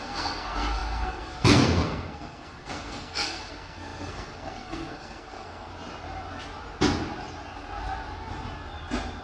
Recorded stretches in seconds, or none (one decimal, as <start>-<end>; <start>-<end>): 5.7-9.2